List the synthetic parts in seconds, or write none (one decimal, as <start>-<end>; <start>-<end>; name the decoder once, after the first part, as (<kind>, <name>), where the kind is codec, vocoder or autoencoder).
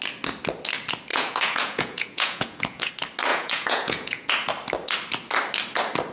1.1-2.9 (vocoder, Vocos); 3.3-4.3